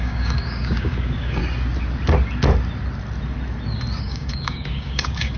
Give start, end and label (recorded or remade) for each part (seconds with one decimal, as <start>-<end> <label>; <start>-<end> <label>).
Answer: 0.0-1.4 remade; 1.4-4.0 recorded; 4.0-5.4 remade